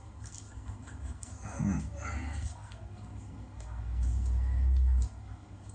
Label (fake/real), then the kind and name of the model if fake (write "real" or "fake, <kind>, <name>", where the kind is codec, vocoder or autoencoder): fake, codec, SNAC